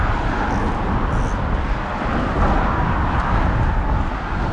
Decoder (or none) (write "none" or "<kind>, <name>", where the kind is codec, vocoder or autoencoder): none